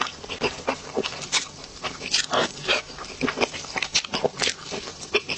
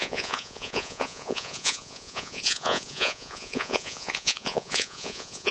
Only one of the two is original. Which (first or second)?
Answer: first